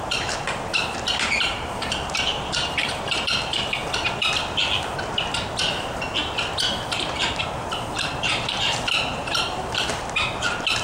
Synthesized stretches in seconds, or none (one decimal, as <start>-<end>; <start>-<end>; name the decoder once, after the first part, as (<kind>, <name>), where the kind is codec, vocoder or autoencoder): 0.0-3.8 (vocoder, BigVGAN v2); 6.8-10.8